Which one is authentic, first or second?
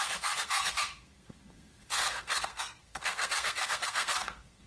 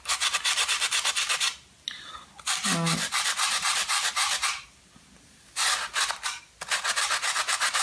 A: second